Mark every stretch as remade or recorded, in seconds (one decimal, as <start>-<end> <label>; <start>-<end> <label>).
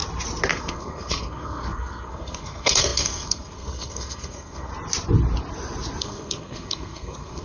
0.0-0.5 recorded; 0.5-4.7 remade; 4.7-6.0 recorded; 6.0-7.4 remade